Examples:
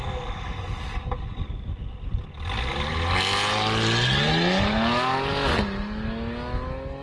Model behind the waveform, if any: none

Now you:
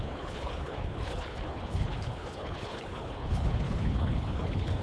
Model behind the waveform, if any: codec, HILCodec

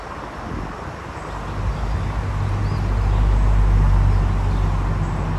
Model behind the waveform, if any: none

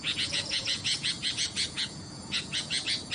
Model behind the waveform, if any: vocoder, Vocos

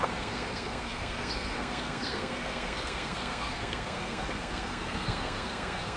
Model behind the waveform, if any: codec, SNAC